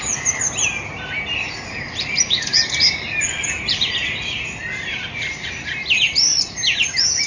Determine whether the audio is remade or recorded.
remade